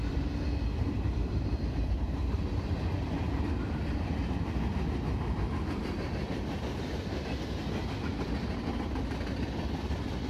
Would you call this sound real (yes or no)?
yes